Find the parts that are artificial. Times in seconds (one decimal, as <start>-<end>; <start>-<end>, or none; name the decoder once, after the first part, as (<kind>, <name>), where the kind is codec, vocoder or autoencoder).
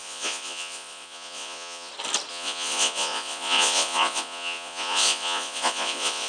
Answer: 0.0-1.9 (vocoder, Vocos); 2.3-6.3